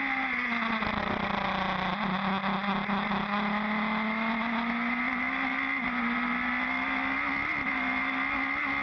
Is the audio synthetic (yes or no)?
no